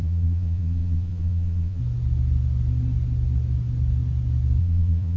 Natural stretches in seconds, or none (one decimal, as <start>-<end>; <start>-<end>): 1.8-4.6